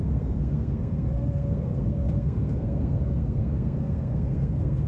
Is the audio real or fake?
fake